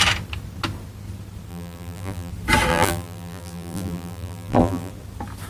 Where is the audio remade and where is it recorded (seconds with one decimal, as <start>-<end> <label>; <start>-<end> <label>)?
0.0-1.5 recorded; 1.5-2.3 remade; 2.3-2.7 recorded; 2.7-4.9 remade; 4.9-5.5 recorded